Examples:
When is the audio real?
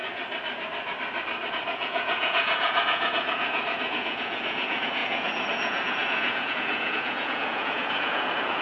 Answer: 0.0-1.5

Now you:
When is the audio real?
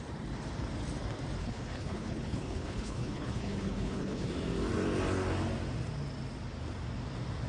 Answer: 0.0-1.4; 4.3-7.5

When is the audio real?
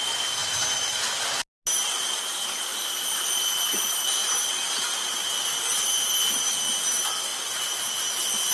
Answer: 0.0-8.5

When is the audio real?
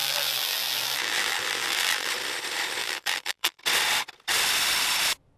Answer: 2.1-2.8; 3.6-5.4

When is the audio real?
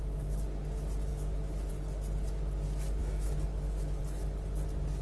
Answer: 0.0-1.1; 1.7-3.0; 4.0-5.0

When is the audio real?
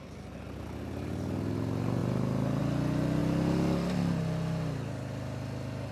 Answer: 0.0-5.9